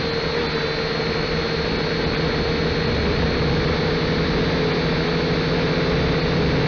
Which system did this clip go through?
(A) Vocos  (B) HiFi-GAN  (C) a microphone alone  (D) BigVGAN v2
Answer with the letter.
C